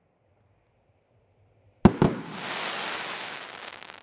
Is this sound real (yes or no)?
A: yes